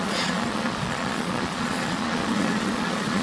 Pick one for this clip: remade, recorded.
remade